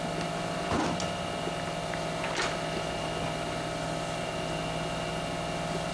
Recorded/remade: recorded